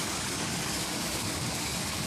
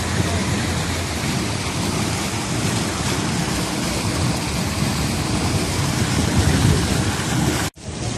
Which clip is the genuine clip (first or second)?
second